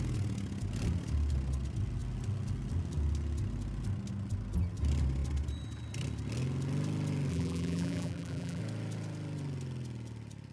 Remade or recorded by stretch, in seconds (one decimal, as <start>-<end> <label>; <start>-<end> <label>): 0.0-7.3 recorded; 7.3-8.6 remade; 8.6-10.5 recorded